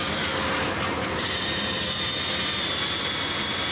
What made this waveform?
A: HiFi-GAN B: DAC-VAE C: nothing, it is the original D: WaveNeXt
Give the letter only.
C